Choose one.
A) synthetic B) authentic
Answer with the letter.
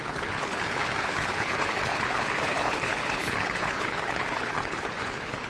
A